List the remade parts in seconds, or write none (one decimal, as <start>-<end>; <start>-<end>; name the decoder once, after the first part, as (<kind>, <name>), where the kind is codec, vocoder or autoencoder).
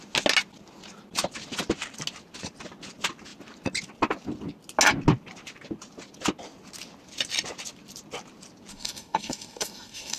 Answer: 8.7-10.2 (codec, DAC)